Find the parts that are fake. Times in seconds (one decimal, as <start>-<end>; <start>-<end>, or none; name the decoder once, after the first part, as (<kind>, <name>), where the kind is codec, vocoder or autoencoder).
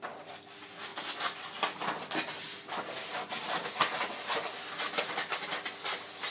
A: none